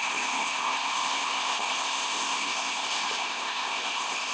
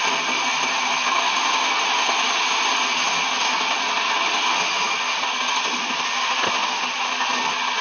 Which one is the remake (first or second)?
first